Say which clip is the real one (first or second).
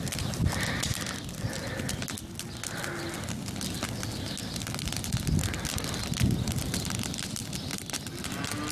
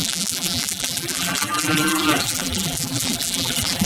first